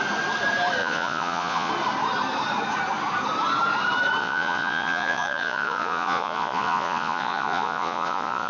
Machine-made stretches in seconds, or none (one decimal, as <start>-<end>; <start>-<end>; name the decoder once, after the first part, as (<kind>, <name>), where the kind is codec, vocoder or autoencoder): 0.8-1.7 (vocoder, Vocos); 4.2-8.5